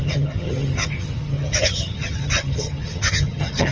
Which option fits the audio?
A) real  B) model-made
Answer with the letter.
B